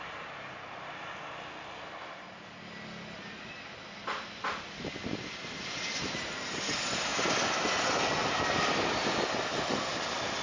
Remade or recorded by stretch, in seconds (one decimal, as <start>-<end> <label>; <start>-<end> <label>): 0.0-10.4 recorded